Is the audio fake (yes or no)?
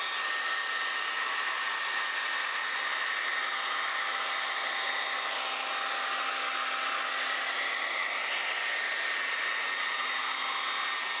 no